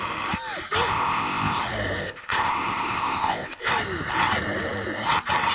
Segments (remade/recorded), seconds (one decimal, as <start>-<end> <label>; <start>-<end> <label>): 0.0-0.9 recorded; 0.9-1.6 remade; 1.6-2.0 recorded; 2.0-3.7 remade; 3.7-5.5 recorded